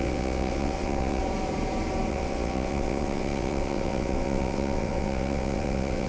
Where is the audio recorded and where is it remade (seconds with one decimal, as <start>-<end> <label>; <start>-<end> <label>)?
0.0-1.2 remade; 1.2-2.1 recorded; 2.1-6.1 remade